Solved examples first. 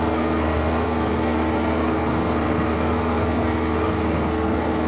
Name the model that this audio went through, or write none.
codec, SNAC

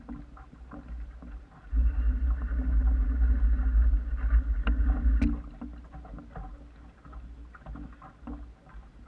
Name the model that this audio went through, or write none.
none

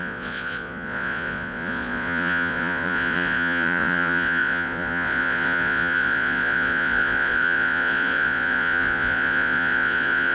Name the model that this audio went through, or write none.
vocoder, Vocos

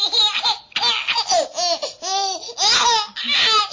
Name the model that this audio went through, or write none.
none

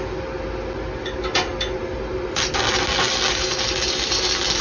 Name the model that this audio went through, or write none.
none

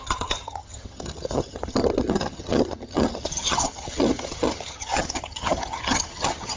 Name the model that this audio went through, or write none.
vocoder, HiFi-GAN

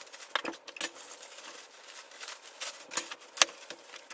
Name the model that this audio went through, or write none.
none